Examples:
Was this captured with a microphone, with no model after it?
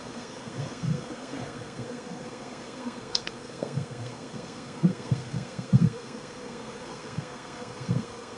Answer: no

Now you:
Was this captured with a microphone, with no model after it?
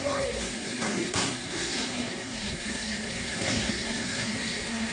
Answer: no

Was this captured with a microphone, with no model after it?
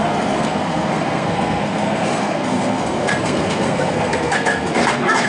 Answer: no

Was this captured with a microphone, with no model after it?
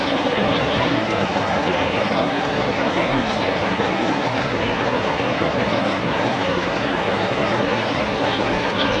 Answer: no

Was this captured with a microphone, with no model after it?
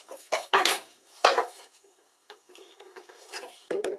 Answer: no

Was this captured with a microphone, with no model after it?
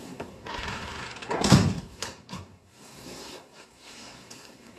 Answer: no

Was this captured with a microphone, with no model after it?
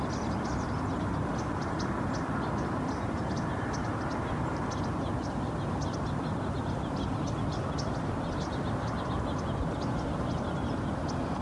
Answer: yes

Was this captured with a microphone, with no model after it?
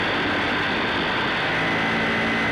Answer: yes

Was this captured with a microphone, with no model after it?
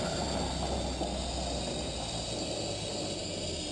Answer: yes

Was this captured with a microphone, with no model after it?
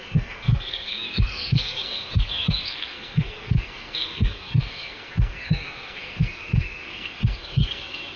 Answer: no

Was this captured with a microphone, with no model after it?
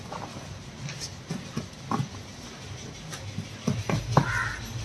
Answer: yes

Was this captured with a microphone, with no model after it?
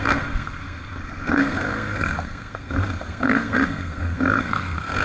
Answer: no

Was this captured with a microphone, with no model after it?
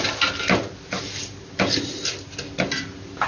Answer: yes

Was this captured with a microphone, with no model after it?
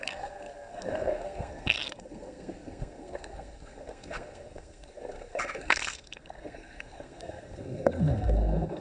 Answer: no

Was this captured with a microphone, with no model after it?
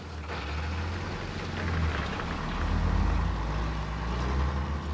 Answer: yes